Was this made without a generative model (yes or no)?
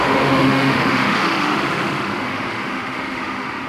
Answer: no